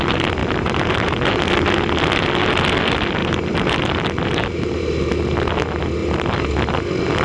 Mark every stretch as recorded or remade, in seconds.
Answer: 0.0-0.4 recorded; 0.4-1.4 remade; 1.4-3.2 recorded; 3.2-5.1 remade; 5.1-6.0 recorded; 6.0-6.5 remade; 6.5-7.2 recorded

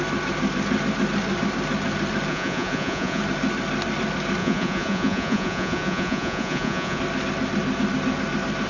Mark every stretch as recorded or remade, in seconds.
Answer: 0.0-2.3 recorded; 2.3-3.2 remade; 3.2-4.4 recorded; 4.4-7.0 remade; 7.0-8.7 recorded

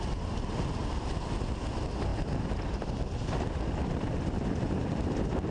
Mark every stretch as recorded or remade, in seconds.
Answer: 0.0-0.8 recorded; 0.8-1.5 remade; 1.5-2.1 recorded; 2.1-5.1 remade; 5.1-5.5 recorded

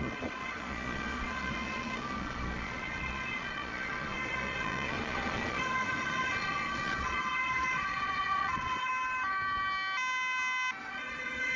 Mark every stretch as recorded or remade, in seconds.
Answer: 0.0-8.9 remade; 8.9-10.8 recorded; 10.8-11.6 remade

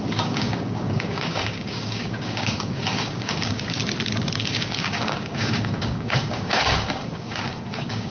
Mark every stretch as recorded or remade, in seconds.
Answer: 0.0-3.8 remade; 3.8-4.4 recorded; 4.4-8.1 remade